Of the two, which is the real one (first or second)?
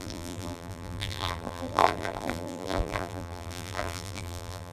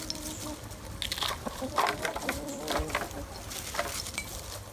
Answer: second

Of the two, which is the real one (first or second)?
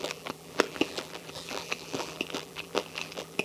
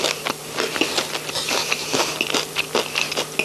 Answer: second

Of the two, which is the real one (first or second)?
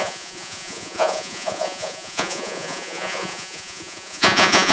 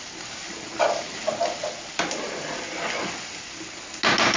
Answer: second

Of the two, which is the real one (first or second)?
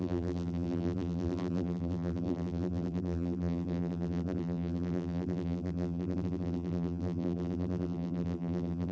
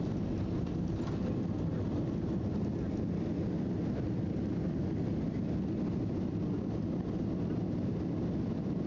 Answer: second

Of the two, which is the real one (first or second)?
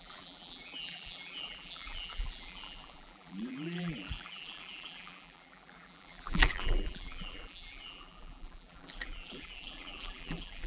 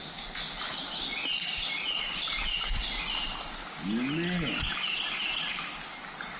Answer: second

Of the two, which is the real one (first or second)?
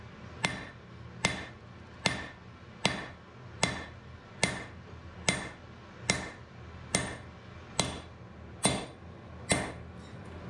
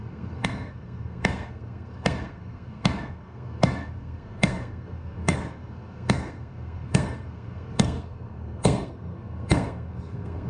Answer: first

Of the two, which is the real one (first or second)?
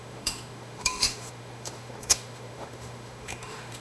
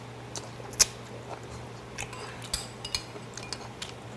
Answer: second